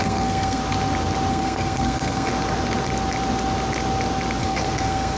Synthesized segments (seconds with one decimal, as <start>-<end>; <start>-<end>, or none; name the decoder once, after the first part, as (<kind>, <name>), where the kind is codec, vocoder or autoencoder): 0.0-0.6 (codec, SNAC); 1.3-2.3; 4.4-5.2

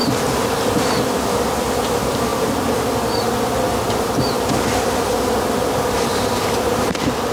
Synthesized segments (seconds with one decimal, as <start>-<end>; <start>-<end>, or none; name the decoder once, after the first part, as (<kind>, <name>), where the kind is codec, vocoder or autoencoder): 0.0-2.3 (vocoder, BigVGAN v2); 3.7-7.3

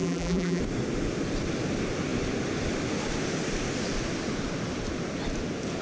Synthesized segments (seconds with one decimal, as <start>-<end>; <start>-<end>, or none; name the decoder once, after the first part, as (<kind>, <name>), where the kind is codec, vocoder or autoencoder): 0.0-0.6 (vocoder, BigVGAN v2)

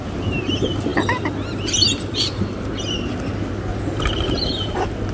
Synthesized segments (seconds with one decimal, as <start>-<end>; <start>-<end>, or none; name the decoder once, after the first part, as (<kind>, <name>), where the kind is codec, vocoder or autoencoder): none

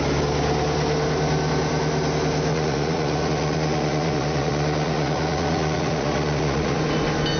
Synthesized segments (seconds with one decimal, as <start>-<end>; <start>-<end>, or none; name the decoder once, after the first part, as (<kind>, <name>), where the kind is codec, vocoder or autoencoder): 2.5-6.8 (vocoder, Vocos)

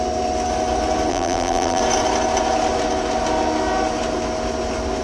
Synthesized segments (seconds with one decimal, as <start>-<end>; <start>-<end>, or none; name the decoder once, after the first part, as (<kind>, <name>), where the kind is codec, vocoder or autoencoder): 1.1-1.8 (vocoder, BigVGAN v2)

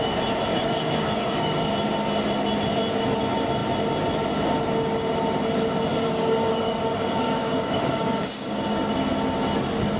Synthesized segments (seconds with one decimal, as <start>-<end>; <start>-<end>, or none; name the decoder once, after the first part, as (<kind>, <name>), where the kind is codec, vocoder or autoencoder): 0.5-1.7 (codec, DAC); 5.9-9.1